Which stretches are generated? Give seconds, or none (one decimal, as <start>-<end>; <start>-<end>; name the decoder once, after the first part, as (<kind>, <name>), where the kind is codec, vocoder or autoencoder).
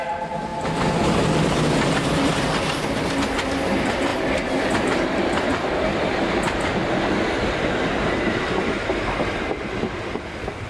none